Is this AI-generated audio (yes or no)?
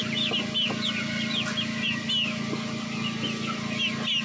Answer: no